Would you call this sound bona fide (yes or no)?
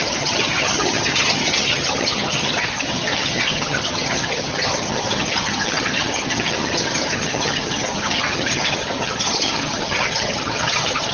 no